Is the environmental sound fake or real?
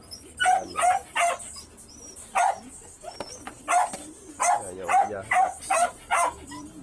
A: real